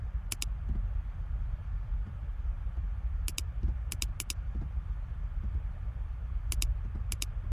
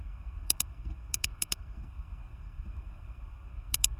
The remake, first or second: second